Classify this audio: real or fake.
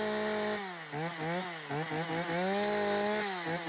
real